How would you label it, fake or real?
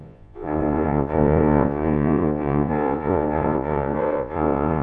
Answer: fake